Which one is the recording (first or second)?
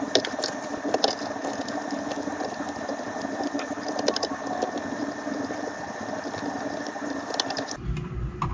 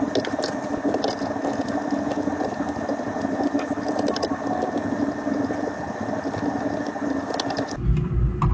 second